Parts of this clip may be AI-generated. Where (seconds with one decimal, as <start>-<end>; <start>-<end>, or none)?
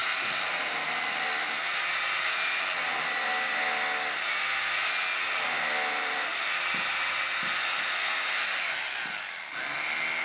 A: none